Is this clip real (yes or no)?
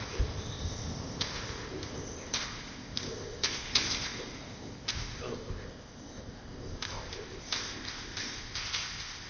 no